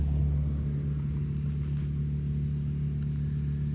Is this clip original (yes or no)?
yes